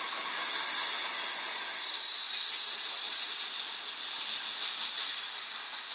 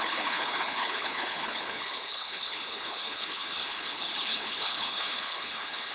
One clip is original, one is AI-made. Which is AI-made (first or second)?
second